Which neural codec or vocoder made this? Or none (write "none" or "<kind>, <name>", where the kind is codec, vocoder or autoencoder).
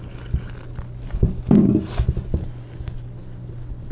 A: none